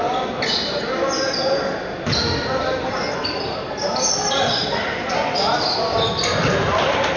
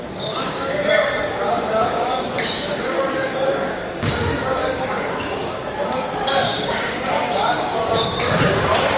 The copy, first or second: second